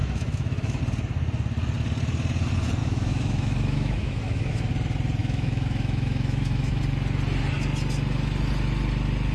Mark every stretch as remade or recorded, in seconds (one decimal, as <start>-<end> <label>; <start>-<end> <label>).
0.0-0.8 remade; 0.8-2.8 recorded; 2.8-4.7 remade; 4.7-5.2 recorded; 5.2-6.8 remade; 6.8-9.3 recorded